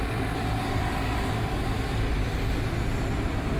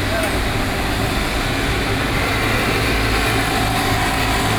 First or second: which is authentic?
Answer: second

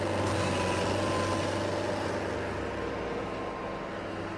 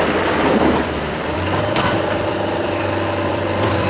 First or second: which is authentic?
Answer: first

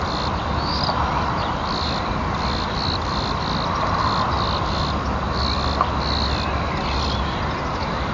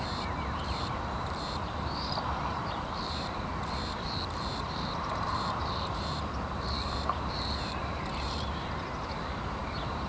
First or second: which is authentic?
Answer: first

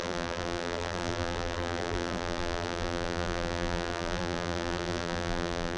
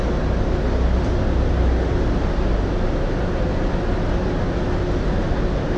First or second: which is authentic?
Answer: second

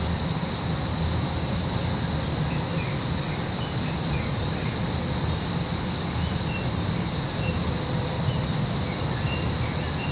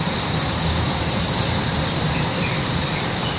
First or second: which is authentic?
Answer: first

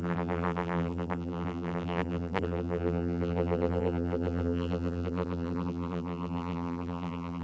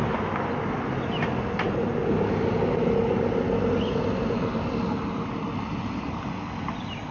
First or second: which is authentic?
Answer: second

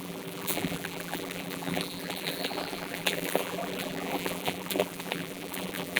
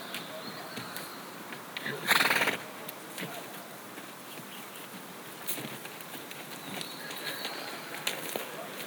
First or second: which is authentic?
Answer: second